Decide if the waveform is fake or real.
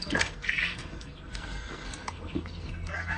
fake